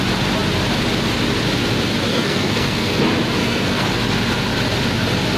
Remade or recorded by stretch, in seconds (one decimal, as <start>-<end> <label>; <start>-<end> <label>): 0.0-2.1 recorded; 2.1-3.0 remade; 3.0-3.4 recorded; 3.4-3.9 remade; 3.9-5.4 recorded